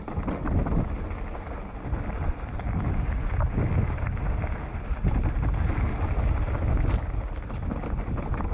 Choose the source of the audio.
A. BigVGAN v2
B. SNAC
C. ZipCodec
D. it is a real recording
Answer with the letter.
D